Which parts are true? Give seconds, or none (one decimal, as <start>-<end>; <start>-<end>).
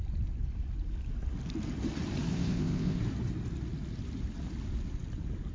0.0-2.3; 3.0-5.5